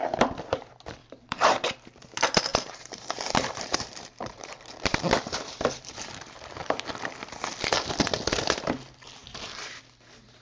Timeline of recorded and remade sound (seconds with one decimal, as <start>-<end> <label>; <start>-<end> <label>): 0.0-1.0 recorded; 1.0-2.0 remade; 2.0-2.5 recorded; 2.5-6.9 remade; 6.9-9.2 recorded; 9.2-9.8 remade; 9.8-10.4 recorded